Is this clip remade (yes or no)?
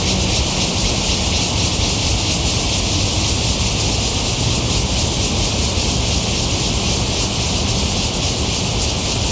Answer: no